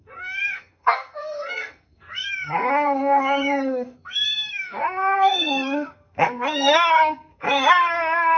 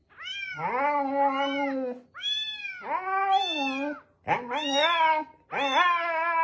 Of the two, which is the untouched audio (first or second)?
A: second